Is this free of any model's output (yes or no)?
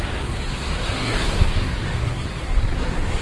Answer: no